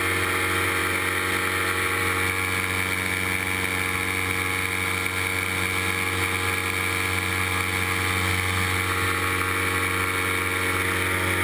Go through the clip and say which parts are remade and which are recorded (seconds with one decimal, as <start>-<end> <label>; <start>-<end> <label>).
0.0-11.4 recorded